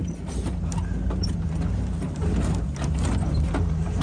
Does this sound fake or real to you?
real